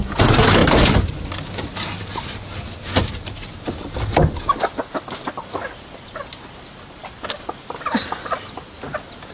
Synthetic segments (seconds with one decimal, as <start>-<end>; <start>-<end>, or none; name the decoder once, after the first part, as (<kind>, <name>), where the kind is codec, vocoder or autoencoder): none